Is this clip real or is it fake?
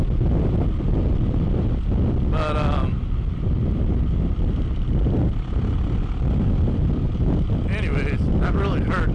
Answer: real